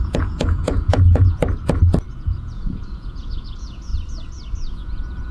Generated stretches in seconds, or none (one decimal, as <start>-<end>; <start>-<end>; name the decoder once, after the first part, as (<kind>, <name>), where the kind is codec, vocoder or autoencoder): 0.0-1.4 (vocoder, Vocos); 2.1-3.9; 4.7-5.3